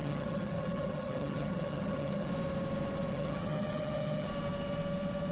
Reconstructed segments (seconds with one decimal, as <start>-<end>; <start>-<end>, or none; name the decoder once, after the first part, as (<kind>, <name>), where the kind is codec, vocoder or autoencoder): 0.0-2.3 (vocoder, HiFi-GAN); 3.1-4.3